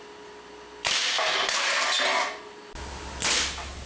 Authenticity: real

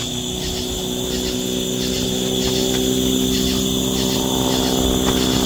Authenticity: real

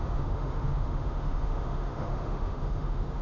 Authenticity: fake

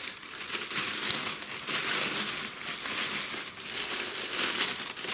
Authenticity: real